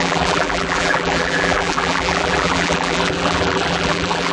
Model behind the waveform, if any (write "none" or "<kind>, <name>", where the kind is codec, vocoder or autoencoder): vocoder, BigVGAN v2